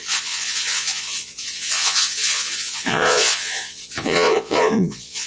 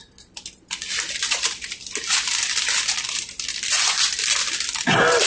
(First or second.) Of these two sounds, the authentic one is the second